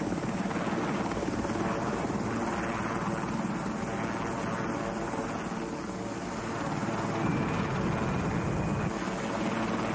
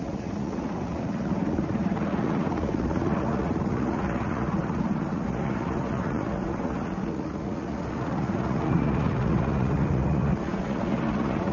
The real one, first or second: first